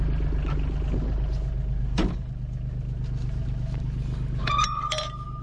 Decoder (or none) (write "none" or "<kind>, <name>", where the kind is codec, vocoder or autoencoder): none